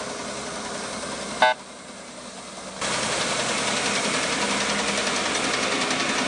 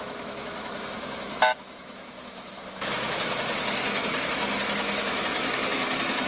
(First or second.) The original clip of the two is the first